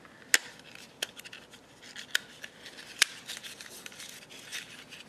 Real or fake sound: real